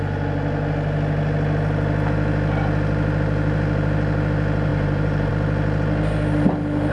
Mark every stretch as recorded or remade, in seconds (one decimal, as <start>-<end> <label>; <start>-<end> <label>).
0.0-4.7 recorded; 4.7-5.3 remade; 5.3-6.9 recorded